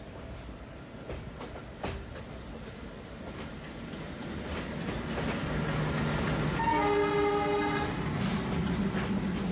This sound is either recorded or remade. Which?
recorded